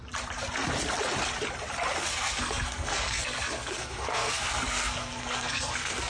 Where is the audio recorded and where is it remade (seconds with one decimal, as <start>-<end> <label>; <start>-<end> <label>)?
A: 0.0-2.1 recorded; 2.1-6.1 remade

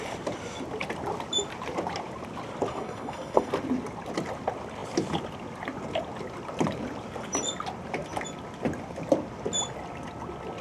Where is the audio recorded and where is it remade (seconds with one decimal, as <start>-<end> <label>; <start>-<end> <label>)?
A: 0.0-2.7 recorded; 2.7-3.5 remade; 3.5-10.6 recorded

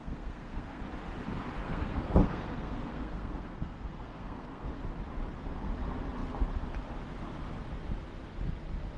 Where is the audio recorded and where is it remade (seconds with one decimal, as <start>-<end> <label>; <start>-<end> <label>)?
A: 0.0-0.8 remade; 0.8-1.6 recorded; 1.6-4.8 remade; 4.8-9.0 recorded

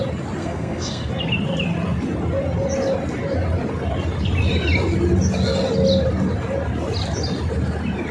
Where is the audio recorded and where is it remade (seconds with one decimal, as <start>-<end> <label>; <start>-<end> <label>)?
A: 0.0-0.4 recorded; 0.4-1.1 remade; 1.1-8.1 recorded

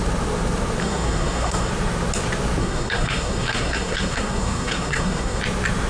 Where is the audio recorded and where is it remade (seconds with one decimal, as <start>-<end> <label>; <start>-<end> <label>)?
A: 0.0-0.8 recorded; 0.8-1.7 remade; 1.7-2.6 recorded; 2.6-5.4 remade; 5.4-5.9 recorded

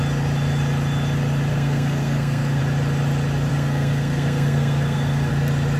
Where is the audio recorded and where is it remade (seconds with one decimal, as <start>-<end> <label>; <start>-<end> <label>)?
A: 0.0-1.5 recorded; 1.5-2.6 remade; 2.6-3.5 recorded; 3.5-5.3 remade; 5.3-5.8 recorded

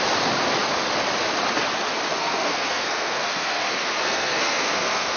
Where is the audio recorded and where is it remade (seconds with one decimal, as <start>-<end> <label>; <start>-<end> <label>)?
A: 0.0-2.1 recorded; 2.1-5.2 remade